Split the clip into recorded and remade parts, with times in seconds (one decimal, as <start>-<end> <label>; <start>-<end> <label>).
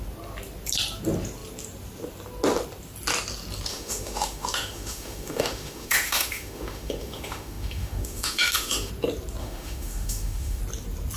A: 0.0-3.7 recorded; 3.7-8.9 remade; 8.9-9.4 recorded; 9.4-10.6 remade; 10.6-11.2 recorded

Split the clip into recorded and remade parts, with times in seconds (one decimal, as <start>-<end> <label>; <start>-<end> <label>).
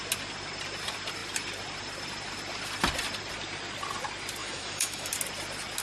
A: 0.0-4.4 recorded; 4.4-5.1 remade; 5.1-5.8 recorded